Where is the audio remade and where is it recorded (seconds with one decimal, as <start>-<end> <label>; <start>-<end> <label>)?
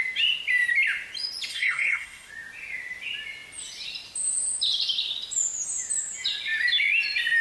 0.0-1.5 recorded; 1.5-2.3 remade; 2.3-7.4 recorded